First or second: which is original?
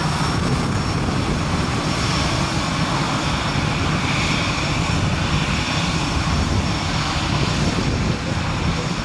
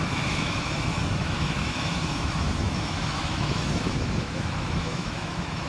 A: first